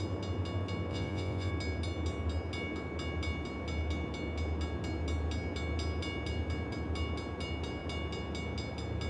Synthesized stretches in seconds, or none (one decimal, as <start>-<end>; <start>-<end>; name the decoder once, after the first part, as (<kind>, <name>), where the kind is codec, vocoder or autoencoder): 0.9-1.5 (vocoder, Vocos)